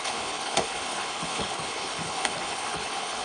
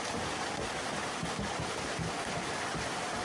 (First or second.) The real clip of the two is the second